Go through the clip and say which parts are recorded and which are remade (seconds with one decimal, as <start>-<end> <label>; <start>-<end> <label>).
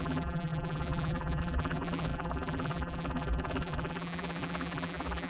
0.0-5.3 remade